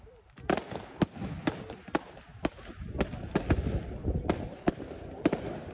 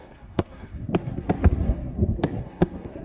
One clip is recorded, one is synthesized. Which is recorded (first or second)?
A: first